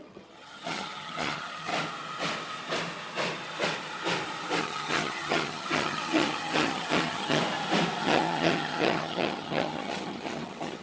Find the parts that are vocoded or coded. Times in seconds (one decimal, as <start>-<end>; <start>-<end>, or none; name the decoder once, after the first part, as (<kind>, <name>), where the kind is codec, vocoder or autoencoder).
0.0-1.7 (vocoder, HiFi-GAN); 4.6-7.4; 8.0-10.8

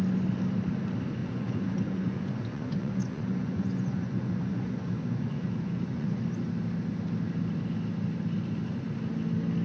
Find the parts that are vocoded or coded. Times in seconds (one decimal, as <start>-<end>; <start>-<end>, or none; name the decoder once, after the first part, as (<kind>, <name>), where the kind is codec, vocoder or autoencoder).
1.2-6.2 (vocoder, Vocos)

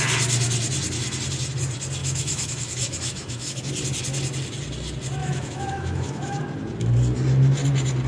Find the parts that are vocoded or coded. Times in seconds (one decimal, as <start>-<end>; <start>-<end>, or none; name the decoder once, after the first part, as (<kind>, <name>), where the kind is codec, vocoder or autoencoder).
2.0-3.6 (autoencoder, DAC-VAE); 5.2-6.4